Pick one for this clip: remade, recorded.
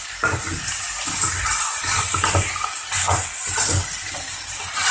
recorded